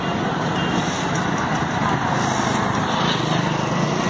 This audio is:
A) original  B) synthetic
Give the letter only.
A